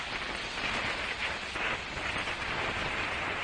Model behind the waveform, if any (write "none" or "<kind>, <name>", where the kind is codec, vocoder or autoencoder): none